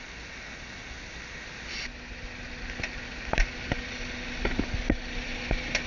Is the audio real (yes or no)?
yes